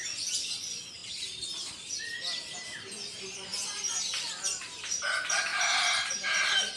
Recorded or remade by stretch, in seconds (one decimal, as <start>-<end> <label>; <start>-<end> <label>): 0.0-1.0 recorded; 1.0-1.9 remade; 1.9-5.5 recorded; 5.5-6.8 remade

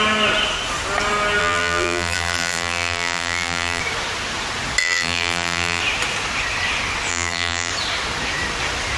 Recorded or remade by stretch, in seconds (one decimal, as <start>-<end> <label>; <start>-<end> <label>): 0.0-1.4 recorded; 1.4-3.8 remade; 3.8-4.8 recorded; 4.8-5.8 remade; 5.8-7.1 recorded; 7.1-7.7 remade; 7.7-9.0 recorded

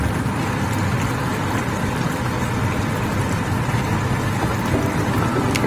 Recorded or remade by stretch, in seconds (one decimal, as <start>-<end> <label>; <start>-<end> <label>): 0.0-5.7 recorded

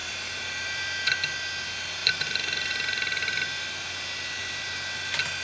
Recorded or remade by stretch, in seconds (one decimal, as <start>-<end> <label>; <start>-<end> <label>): 0.0-1.0 remade; 1.0-2.0 recorded; 2.0-2.7 remade; 2.7-4.4 recorded; 4.4-5.0 remade; 5.0-5.4 recorded

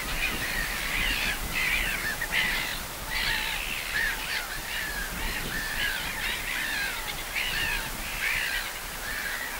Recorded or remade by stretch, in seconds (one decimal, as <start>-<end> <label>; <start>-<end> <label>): 0.0-2.7 recorded; 2.7-6.4 remade; 6.4-9.6 recorded

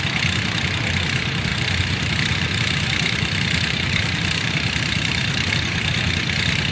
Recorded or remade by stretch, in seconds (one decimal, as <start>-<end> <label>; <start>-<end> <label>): 0.0-1.5 recorded; 1.5-5.5 remade; 5.5-6.7 recorded